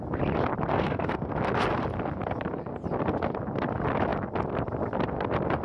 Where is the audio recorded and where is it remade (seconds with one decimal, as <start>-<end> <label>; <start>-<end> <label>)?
0.0-0.7 recorded; 0.7-1.3 remade; 1.3-5.6 recorded